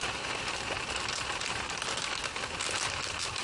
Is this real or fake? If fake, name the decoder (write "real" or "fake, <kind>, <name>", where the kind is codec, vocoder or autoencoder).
real